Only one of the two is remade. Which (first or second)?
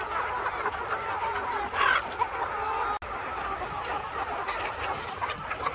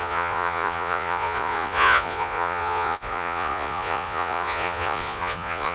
second